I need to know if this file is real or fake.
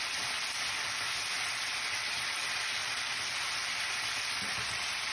real